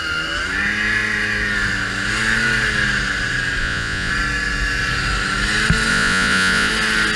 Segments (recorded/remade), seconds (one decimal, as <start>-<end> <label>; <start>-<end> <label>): 0.0-3.6 recorded; 3.6-4.1 remade; 4.1-5.9 recorded; 5.9-6.7 remade; 6.7-7.2 recorded